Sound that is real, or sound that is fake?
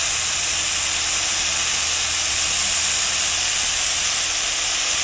real